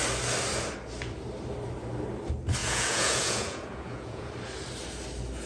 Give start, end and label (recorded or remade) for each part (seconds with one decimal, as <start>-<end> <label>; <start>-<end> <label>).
0.0-2.6 recorded; 2.6-4.3 remade; 4.3-5.5 recorded